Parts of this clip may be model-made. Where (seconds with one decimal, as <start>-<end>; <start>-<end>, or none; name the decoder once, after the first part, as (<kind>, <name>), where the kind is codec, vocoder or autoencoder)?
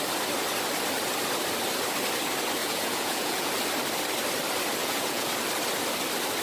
2.6-3.5 (vocoder, Vocos); 4.8-5.3